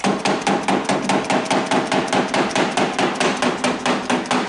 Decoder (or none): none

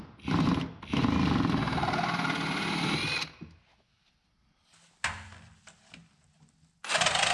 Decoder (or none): none